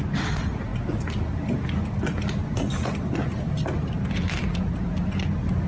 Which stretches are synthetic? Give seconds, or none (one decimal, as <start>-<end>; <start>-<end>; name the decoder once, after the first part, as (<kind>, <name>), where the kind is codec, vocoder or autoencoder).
none